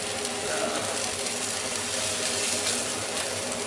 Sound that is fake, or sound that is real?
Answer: real